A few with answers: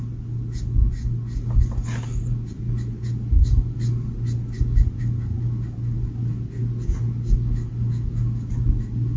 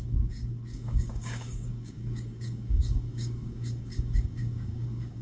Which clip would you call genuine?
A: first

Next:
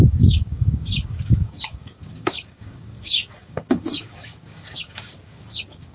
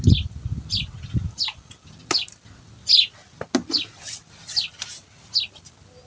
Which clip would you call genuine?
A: second